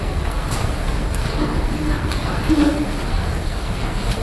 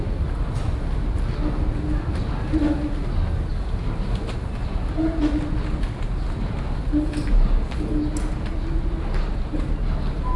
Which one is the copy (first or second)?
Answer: first